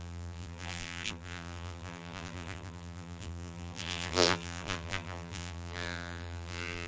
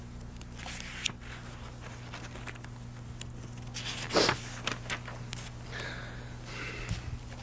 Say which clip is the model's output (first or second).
first